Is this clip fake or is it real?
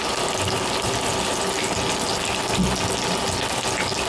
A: real